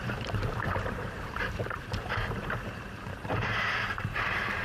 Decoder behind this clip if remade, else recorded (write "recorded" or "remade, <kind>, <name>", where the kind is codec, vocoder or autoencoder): remade, vocoder, BigVGAN v2